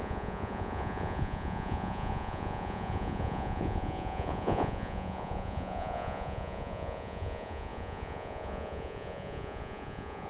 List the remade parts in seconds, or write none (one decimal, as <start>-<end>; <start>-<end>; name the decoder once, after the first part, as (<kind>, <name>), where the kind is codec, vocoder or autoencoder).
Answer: 0.0-10.3 (vocoder, Vocos)